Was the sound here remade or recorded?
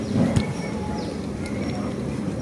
remade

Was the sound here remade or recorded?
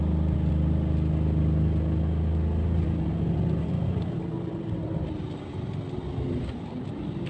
recorded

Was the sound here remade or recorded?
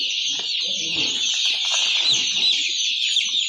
remade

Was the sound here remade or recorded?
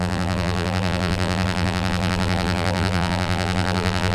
remade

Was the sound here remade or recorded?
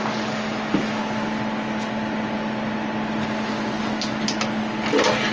recorded